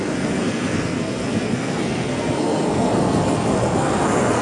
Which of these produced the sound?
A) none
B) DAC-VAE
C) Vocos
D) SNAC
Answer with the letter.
D